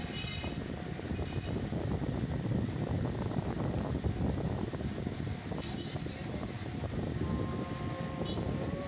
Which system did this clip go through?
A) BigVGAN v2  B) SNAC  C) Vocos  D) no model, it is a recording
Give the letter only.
D